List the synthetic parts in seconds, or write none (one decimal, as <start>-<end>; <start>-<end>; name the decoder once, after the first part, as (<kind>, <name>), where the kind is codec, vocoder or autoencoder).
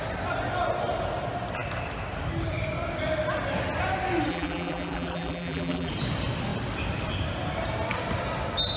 4.3-5.9 (vocoder, BigVGAN v2)